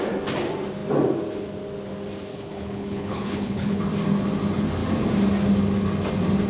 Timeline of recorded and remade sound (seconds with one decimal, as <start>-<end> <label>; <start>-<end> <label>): 0.0-2.3 recorded; 2.3-3.8 remade; 3.8-6.5 recorded